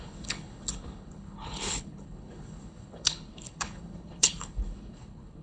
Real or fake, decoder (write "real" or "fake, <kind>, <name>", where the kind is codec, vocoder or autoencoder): fake, codec, HILCodec